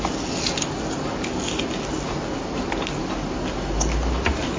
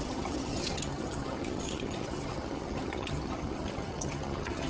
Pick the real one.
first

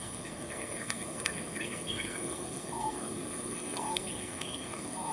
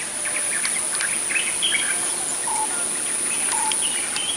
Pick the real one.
second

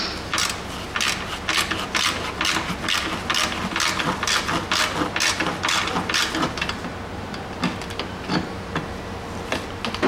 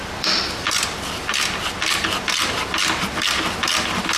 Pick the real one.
first